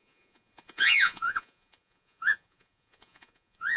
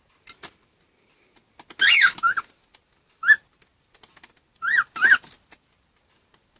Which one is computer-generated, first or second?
first